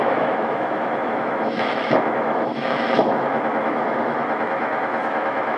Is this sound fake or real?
fake